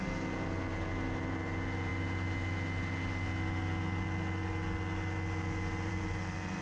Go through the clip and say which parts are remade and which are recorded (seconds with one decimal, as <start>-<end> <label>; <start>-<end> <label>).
0.0-6.6 recorded